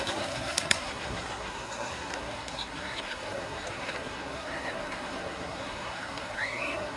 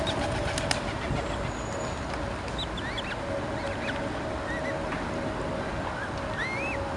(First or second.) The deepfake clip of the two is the first